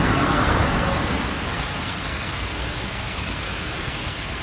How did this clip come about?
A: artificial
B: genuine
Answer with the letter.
A